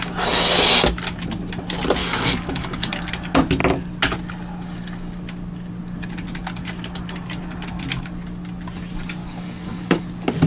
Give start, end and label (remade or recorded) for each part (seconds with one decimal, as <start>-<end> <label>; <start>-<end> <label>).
0.0-2.0 recorded; 2.0-3.0 remade; 3.0-9.2 recorded; 9.2-10.0 remade; 10.0-10.5 recorded